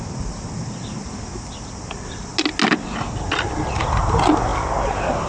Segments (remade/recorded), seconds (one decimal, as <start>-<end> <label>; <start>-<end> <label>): 0.0-5.3 recorded